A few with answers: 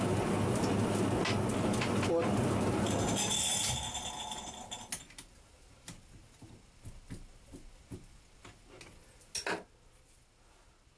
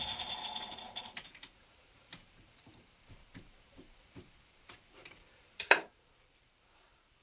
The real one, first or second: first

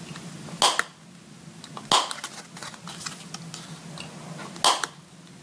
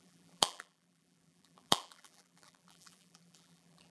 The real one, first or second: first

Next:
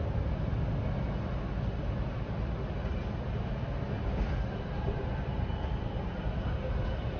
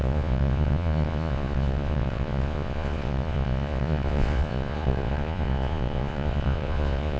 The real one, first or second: first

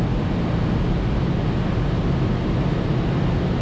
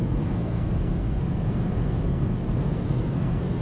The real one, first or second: first